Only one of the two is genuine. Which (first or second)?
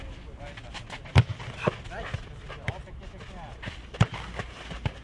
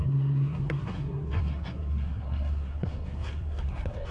first